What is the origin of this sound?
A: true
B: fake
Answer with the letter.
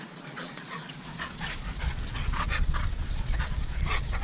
B